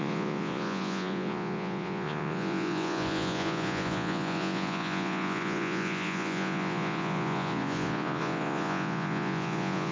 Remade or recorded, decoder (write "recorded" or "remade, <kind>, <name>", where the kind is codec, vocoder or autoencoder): remade, vocoder, Vocos